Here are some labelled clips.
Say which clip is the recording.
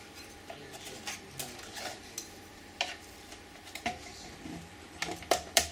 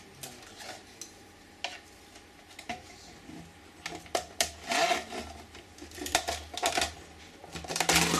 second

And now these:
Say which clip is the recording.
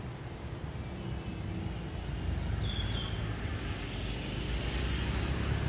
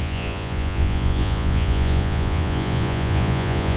first